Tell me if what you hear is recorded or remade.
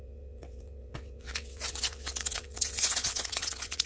remade